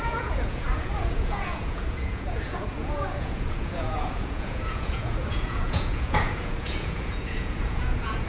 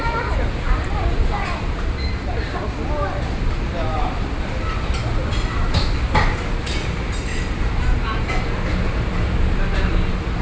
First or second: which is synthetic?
first